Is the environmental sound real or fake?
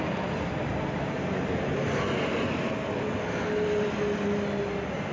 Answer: real